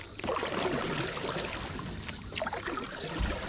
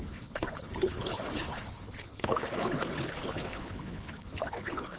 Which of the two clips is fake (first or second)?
second